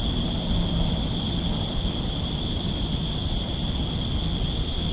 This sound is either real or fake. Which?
real